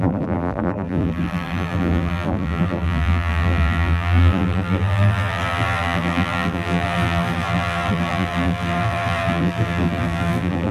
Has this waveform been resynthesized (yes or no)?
yes